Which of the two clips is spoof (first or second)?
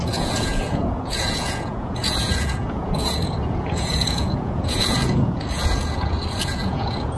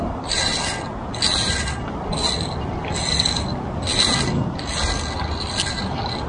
first